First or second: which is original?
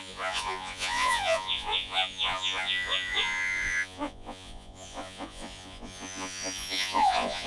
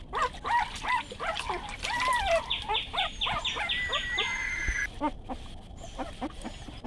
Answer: second